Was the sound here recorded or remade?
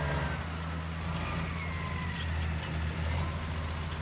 recorded